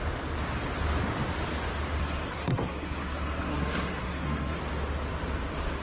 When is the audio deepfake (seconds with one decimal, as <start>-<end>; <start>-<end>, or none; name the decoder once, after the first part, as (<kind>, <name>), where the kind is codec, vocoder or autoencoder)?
2.0-4.6 (codec, SNAC)